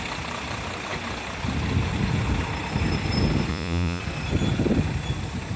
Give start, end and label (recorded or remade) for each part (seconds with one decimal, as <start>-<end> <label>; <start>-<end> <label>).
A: 0.0-3.5 recorded; 3.5-4.0 remade; 4.0-5.6 recorded